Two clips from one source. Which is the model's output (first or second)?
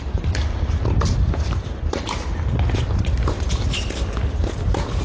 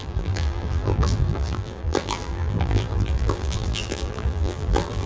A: second